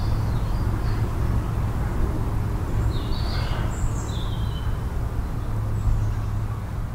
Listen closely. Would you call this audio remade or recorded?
recorded